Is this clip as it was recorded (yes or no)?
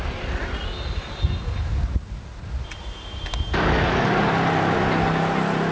yes